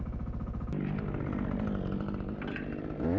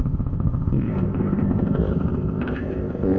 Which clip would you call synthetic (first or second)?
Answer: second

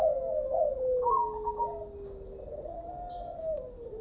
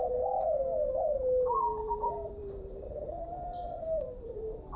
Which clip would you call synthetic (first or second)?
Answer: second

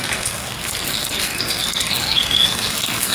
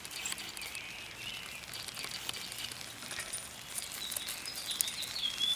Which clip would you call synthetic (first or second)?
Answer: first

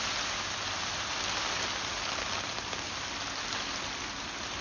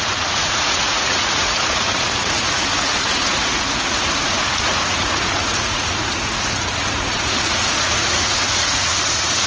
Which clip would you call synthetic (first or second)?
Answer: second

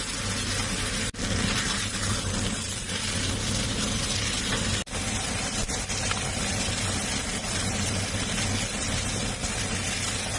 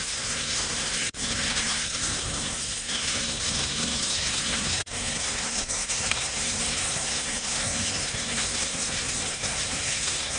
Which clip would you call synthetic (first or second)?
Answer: second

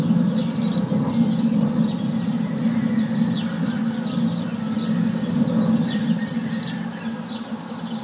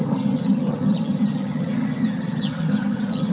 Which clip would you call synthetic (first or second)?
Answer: second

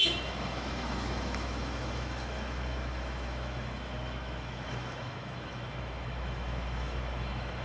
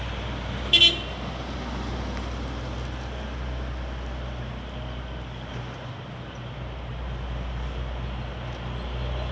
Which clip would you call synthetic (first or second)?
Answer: first